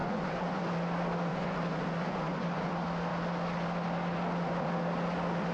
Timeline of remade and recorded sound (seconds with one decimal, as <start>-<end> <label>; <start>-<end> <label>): 0.0-0.6 remade; 0.6-1.3 recorded; 1.3-2.7 remade; 2.7-5.5 recorded